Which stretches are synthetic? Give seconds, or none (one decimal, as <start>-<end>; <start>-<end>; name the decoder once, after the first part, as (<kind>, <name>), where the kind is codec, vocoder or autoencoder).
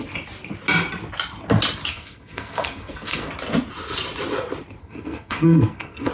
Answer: 1.9-3.3 (codec, SNAC); 4.8-6.1